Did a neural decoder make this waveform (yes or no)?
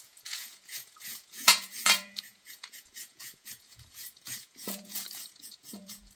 yes